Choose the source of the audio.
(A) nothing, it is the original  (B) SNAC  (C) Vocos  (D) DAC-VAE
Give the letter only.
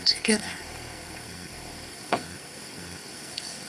B